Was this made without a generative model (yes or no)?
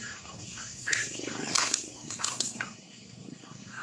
no